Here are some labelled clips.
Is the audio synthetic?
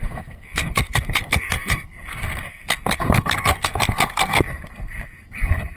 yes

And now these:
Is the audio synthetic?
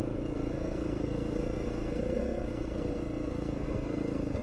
yes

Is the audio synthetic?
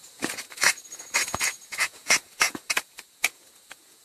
yes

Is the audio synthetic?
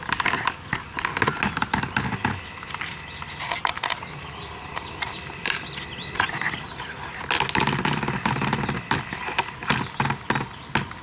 no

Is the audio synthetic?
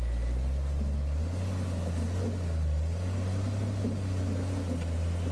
no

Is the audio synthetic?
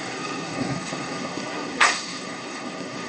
yes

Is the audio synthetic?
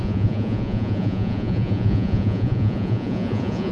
yes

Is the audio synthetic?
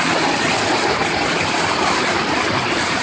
no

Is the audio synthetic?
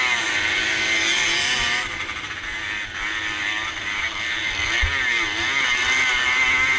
no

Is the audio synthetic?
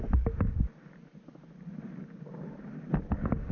no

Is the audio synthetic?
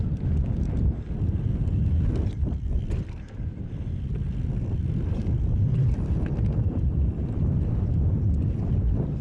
no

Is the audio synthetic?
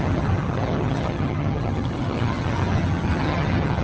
yes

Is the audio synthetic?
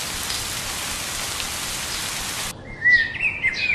no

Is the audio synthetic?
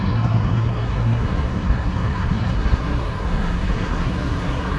yes